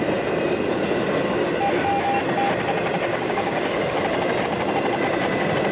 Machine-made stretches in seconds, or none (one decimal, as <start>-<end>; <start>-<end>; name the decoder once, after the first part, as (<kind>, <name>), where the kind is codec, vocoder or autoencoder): 3.1-3.9 (codec, DAC)